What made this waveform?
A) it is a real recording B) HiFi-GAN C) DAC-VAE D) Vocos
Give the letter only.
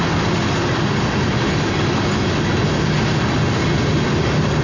A